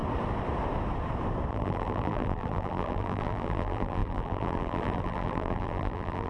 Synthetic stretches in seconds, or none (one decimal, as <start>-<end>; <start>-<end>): 1.5-6.3